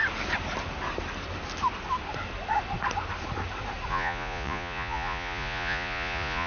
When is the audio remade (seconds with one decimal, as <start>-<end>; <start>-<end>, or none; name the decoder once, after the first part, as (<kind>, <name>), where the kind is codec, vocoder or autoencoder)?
3.9-6.5 (vocoder, Vocos)